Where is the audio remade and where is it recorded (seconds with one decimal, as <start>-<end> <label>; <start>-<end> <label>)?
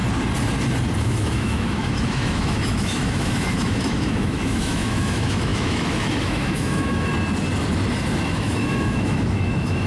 0.0-1.0 recorded; 1.0-7.1 remade; 7.1-8.3 recorded; 8.3-9.9 remade